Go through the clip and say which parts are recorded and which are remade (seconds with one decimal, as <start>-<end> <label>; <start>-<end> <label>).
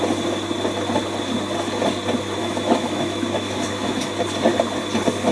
0.0-2.4 recorded; 2.4-4.0 remade; 4.0-5.3 recorded